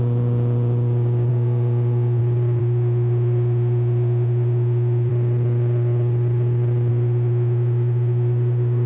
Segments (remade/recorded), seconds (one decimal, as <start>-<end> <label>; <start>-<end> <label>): 0.0-1.3 recorded; 1.3-2.2 remade; 2.2-2.6 recorded; 2.6-5.1 remade; 5.1-6.9 recorded; 6.9-8.9 remade

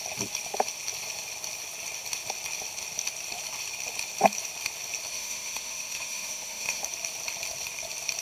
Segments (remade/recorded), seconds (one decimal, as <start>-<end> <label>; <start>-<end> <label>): 0.0-5.1 recorded; 5.1-6.8 remade; 6.8-8.2 recorded